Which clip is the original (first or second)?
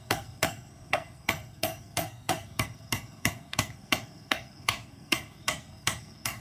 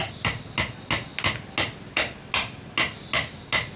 second